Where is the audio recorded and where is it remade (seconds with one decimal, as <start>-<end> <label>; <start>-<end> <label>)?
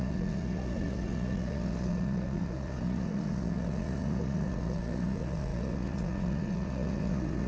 0.0-7.5 remade